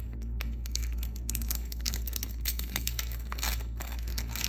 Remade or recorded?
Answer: remade